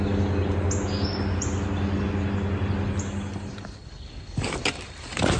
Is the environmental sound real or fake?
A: real